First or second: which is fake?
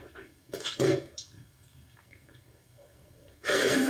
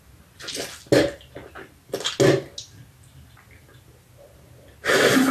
first